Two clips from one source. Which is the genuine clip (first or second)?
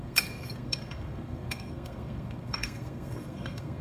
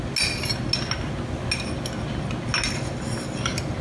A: second